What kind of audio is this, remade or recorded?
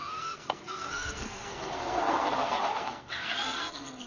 remade